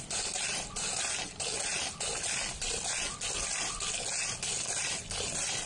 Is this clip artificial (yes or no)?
no